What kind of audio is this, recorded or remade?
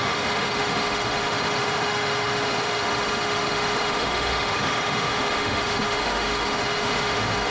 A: remade